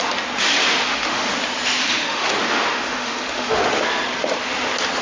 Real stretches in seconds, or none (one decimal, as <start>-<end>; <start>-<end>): 0.0-0.7; 1.3-1.8; 3.6-5.0